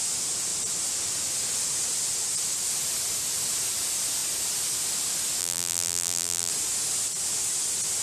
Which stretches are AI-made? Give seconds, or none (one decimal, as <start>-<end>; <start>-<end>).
5.4-6.5